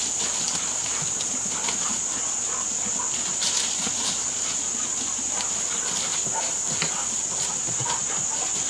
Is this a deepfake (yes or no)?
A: no